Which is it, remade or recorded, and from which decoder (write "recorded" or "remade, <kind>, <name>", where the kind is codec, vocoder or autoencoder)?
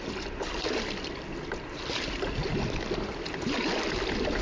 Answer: recorded